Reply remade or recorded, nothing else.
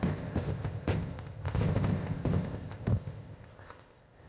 remade